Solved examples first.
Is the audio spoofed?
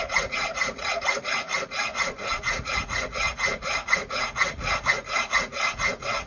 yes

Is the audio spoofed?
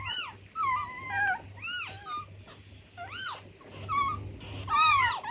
no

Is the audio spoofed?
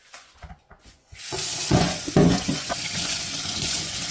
yes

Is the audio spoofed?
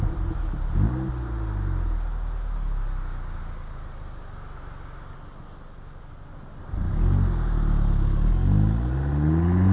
no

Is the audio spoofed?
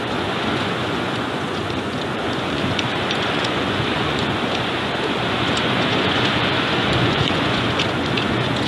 yes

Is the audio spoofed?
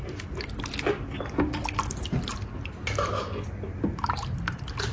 no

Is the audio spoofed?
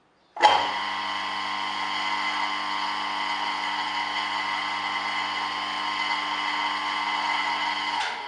no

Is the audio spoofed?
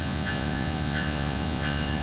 yes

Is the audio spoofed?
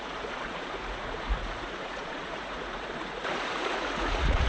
yes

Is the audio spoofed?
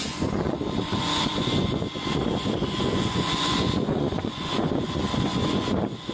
yes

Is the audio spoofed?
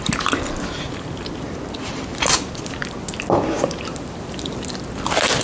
no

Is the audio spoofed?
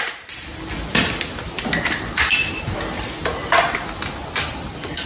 no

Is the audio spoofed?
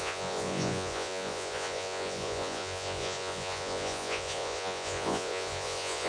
yes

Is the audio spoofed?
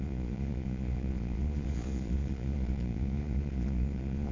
yes